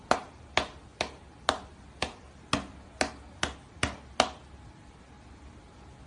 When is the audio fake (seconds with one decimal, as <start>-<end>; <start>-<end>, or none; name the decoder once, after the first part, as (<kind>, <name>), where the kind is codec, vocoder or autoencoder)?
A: none